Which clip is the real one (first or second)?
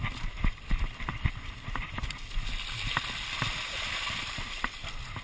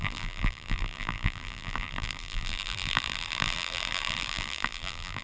first